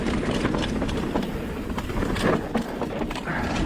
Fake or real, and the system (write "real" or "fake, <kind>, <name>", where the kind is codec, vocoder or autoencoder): fake, vocoder, BigVGAN v2